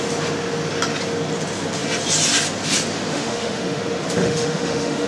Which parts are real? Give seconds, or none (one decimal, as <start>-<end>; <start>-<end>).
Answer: 0.0-3.1; 3.8-4.2